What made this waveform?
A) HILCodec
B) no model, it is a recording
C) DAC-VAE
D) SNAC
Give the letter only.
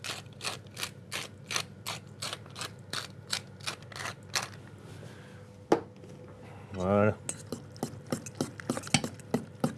B